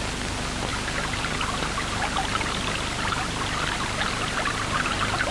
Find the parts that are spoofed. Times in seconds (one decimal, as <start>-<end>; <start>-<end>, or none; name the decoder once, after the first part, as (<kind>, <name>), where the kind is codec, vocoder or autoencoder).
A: none